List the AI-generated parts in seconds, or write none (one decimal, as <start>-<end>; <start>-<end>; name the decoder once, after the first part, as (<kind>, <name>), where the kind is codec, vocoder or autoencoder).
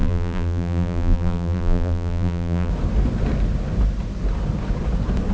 0.0-2.7 (vocoder, BigVGAN v2)